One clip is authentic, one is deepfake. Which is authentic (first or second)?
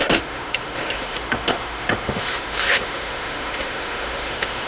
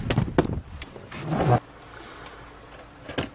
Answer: second